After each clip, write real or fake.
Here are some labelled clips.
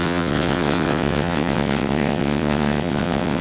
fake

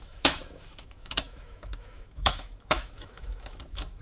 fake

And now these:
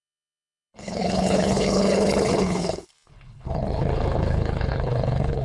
fake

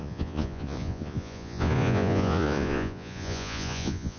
fake